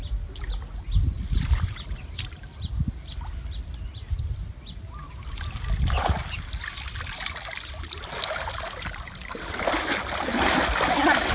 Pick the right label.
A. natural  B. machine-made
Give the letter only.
A